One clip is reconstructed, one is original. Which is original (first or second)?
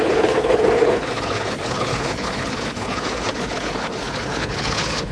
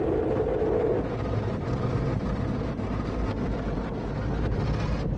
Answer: second